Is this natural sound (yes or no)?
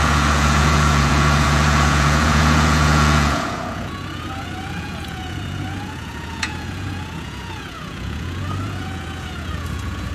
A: no